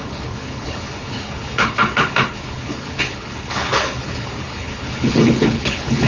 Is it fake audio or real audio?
fake